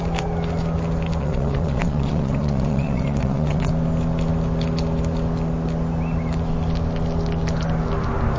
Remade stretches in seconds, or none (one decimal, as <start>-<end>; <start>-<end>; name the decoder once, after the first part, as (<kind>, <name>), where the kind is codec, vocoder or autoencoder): 1.2-3.7 (vocoder, WaveNeXt)